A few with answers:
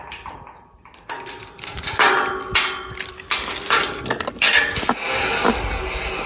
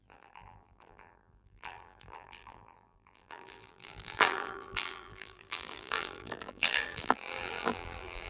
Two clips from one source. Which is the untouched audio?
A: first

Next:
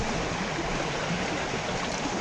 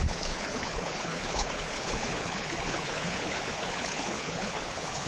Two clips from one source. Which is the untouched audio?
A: first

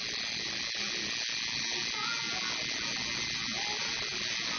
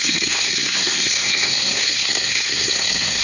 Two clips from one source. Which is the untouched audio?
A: first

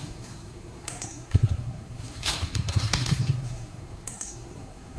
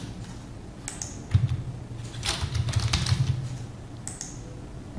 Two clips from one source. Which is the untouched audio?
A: second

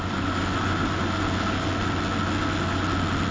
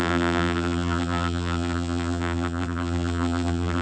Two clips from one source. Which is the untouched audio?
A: first